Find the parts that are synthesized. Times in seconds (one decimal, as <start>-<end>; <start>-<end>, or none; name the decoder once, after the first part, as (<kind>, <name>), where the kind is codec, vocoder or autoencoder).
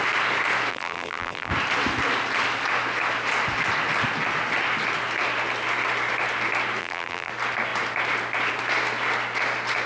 0.7-1.5 (vocoder, BigVGAN v2); 6.8-7.3